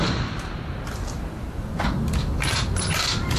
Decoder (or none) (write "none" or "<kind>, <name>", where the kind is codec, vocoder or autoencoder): none